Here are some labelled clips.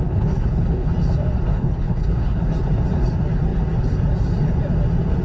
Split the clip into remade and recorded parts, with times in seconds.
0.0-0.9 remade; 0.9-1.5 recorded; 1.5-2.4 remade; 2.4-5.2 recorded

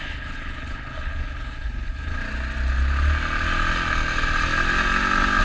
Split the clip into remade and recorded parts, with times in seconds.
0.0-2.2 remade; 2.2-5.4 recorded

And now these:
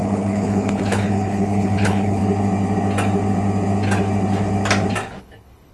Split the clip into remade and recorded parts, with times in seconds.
0.0-2.2 remade; 2.2-5.2 recorded; 5.2-5.7 remade

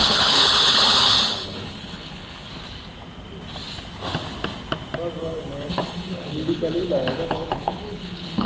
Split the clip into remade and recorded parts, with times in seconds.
0.0-2.5 remade; 2.5-5.2 recorded; 5.2-8.5 remade

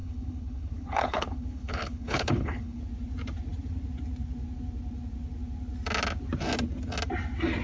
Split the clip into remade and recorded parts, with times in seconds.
0.0-2.8 remade; 2.8-7.6 recorded

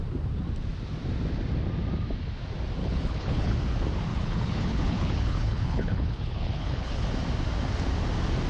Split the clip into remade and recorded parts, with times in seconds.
0.0-2.8 recorded; 2.8-3.5 remade; 3.5-4.1 recorded; 4.1-7.1 remade; 7.1-8.5 recorded

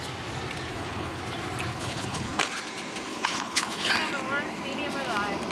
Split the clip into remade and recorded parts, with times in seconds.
0.0-0.7 recorded; 0.7-1.2 remade; 1.2-1.7 recorded; 1.7-2.5 remade; 2.5-3.1 recorded; 3.1-3.9 remade; 3.9-5.5 recorded